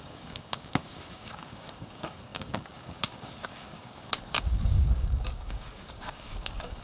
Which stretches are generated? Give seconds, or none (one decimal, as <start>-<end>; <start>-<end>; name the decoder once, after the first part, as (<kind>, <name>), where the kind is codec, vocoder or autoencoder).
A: 0.0-6.8 (codec, DAC)

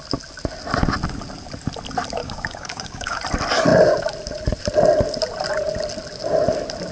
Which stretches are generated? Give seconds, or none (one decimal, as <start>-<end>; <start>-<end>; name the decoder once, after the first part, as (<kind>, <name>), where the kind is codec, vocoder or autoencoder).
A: 2.2-3.2 (codec, DAC)

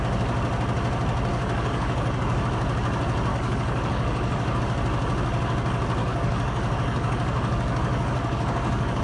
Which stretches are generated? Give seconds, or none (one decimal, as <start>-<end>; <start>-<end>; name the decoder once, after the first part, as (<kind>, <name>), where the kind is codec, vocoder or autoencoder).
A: 1.3-2.4 (codec, DAC); 3.3-4.6; 6.0-9.0

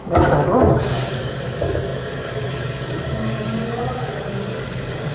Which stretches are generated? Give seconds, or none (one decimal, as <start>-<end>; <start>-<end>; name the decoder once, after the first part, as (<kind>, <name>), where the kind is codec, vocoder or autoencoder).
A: 0.0-5.1 (codec, DAC)